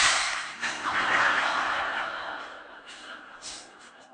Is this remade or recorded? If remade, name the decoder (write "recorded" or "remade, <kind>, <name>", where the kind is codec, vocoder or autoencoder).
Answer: remade, codec, SNAC